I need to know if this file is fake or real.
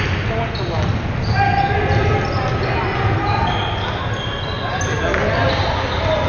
real